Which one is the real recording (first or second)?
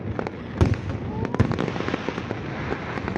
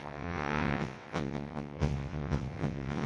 first